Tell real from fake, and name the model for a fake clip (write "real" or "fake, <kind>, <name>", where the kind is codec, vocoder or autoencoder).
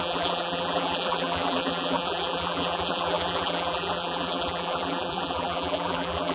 fake, vocoder, BigVGAN v2